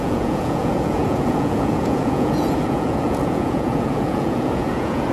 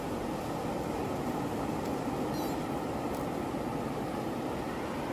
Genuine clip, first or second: second